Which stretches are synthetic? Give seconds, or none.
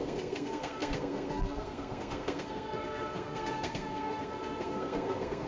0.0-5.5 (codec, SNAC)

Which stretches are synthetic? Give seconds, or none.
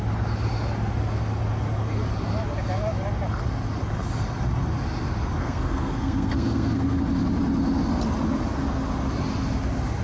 5.4-7.0 (codec, SNAC)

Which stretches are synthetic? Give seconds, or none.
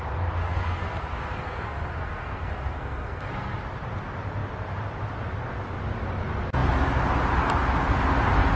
0.4-3.6 (codec, SNAC)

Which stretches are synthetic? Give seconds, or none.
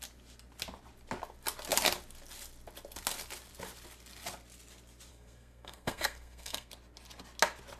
5.1-6.7 (codec, SNAC)